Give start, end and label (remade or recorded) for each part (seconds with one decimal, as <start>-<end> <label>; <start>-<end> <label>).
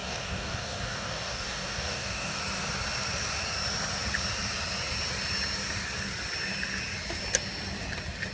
0.0-2.4 remade; 2.4-8.3 recorded